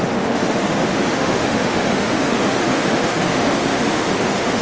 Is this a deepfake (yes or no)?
yes